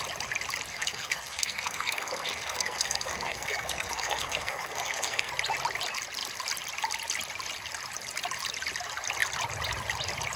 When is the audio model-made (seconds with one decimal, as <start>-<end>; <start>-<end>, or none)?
0.7-5.3